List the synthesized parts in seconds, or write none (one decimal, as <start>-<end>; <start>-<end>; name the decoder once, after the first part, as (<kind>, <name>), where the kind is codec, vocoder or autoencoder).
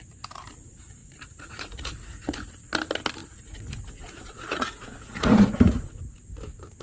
1.0-2.5 (vocoder, Vocos); 3.2-6.0